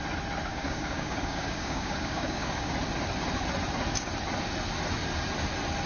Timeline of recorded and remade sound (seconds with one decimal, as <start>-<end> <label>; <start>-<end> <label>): 0.0-0.5 recorded; 0.5-2.7 remade; 2.7-5.9 recorded